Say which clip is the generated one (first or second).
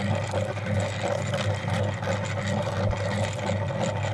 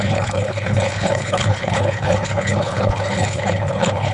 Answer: second